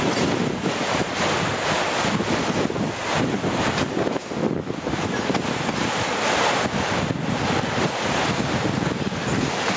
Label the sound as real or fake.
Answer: real